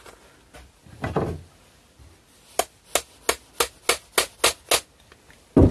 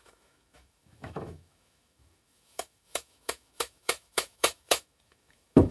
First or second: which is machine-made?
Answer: second